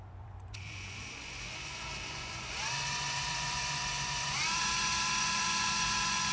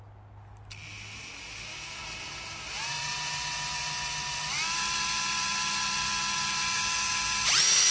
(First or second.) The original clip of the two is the second